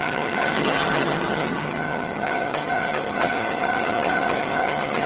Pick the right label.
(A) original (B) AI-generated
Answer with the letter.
B